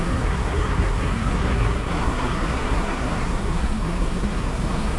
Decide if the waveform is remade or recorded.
remade